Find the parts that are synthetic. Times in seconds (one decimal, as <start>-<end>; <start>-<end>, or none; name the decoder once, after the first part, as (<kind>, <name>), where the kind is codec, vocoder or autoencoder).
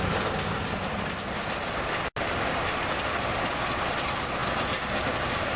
none